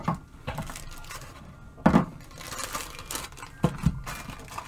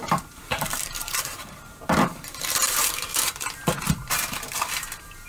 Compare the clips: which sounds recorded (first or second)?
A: first